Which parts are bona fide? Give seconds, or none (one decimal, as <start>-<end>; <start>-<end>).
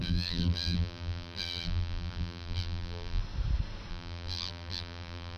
3.2-3.9